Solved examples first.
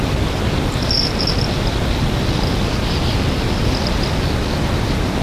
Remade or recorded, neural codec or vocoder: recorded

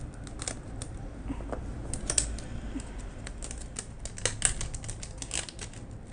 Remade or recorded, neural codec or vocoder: recorded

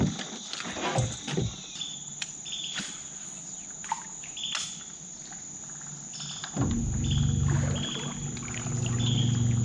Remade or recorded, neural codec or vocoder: recorded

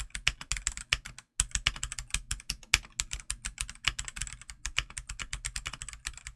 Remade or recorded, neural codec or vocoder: recorded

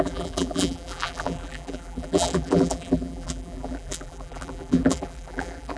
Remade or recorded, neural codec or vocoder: remade, vocoder, BigVGAN v2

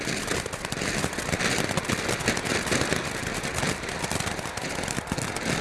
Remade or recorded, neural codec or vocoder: recorded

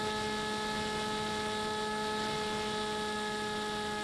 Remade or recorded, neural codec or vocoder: recorded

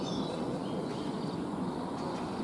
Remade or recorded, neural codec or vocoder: remade, vocoder, Vocos